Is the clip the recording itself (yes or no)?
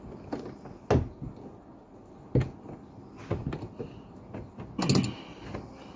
yes